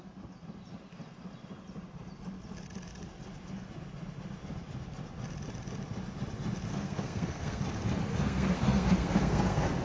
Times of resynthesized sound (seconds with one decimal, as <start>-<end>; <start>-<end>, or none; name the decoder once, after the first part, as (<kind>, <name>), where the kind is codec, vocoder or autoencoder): 6.7-7.6 (codec, SNAC); 8.1-9.8

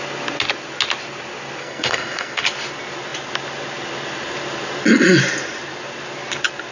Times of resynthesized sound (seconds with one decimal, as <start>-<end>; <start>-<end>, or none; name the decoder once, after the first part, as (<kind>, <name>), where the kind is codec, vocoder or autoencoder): 1.6-2.4 (codec, SNAC)

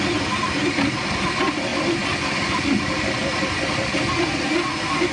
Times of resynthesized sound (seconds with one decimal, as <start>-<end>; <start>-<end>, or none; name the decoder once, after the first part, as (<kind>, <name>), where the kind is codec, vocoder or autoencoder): none

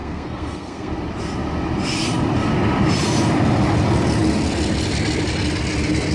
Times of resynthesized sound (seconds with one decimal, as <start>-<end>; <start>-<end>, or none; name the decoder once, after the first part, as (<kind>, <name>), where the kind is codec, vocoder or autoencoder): 0.0-0.9 (codec, SNAC)

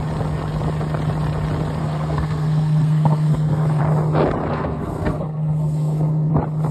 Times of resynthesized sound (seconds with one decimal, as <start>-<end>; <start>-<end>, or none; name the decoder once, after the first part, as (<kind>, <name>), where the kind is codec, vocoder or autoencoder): 1.8-3.8 (codec, SNAC); 4.5-6.3

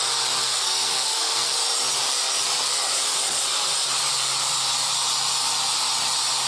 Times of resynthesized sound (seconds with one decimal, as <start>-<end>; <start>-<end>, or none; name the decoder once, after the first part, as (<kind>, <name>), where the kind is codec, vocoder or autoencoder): 0.4-1.5 (codec, SNAC)